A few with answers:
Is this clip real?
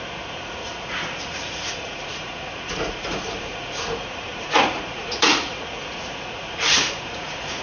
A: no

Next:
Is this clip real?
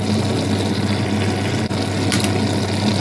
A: yes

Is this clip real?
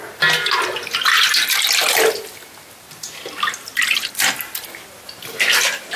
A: yes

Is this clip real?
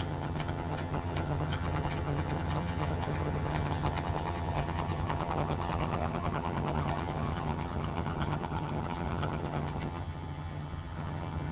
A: no